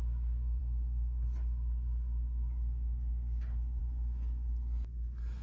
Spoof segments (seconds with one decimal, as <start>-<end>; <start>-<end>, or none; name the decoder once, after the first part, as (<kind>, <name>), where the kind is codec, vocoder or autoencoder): none